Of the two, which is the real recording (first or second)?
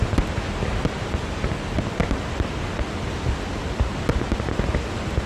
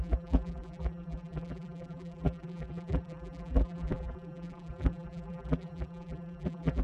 first